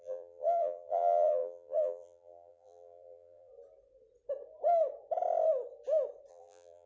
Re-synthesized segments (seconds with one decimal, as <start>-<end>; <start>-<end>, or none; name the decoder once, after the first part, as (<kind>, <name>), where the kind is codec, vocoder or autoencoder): 0.0-3.5 (vocoder, BigVGAN v2); 6.3-6.9